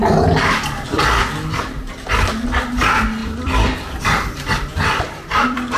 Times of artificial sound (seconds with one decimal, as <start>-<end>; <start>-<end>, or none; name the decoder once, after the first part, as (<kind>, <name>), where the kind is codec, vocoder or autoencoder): 3.2-4.0 (vocoder, BigVGAN v2); 4.7-5.8